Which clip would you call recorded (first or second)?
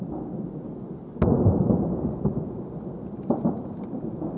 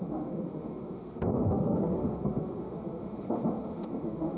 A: first